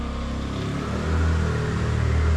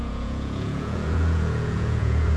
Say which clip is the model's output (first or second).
second